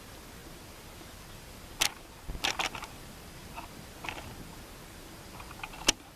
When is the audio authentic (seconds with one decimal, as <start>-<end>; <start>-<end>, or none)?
0.0-6.2